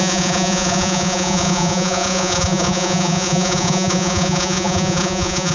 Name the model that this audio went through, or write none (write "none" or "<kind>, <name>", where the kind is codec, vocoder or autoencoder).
vocoder, Vocos